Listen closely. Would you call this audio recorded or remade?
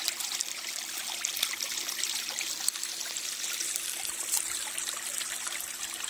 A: remade